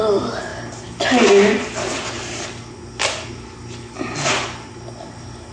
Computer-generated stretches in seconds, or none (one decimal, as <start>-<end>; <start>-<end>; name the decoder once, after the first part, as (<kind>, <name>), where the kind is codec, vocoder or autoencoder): none